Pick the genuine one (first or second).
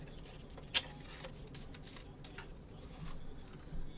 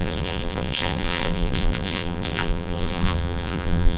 first